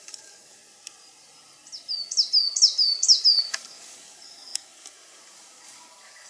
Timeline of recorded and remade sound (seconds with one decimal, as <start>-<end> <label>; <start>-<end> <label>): 0.0-0.6 remade; 0.6-3.5 recorded; 3.5-6.3 remade